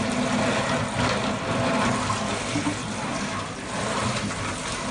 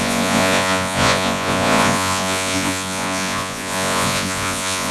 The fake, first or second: second